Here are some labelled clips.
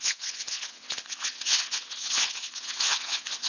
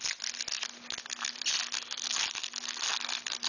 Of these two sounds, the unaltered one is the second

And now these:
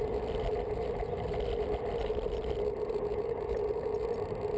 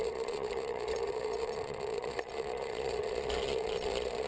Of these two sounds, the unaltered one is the first